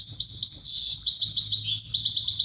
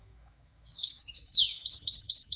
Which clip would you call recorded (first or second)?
first